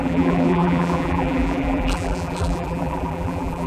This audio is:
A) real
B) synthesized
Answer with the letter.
B